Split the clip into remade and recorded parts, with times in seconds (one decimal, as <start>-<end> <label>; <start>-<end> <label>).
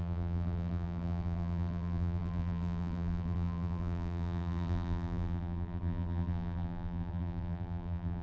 0.0-8.2 remade